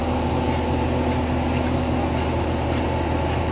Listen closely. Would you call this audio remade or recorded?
recorded